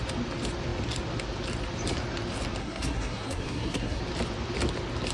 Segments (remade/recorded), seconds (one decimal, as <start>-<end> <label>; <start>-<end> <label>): 0.0-2.6 recorded; 2.6-4.0 remade; 4.0-5.1 recorded

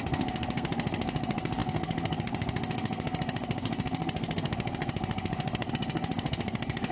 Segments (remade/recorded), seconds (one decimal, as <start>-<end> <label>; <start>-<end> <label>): 0.0-6.9 remade

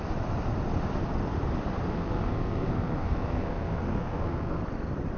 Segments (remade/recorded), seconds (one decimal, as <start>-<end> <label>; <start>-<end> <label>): 0.0-1.9 recorded; 1.9-4.6 remade; 4.6-5.2 recorded

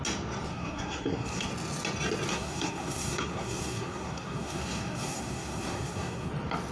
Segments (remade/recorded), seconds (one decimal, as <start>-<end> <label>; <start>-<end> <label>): 0.0-0.5 recorded; 0.5-1.5 remade; 1.5-2.3 recorded; 2.3-6.3 remade; 6.3-6.7 recorded

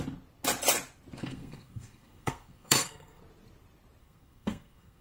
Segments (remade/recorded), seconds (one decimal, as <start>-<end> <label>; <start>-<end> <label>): 0.0-1.2 recorded; 1.2-3.2 remade; 3.2-4.0 recorded; 4.0-5.0 remade